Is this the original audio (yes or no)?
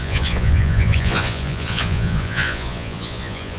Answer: no